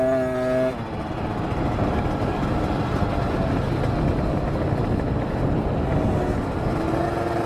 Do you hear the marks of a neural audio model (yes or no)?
no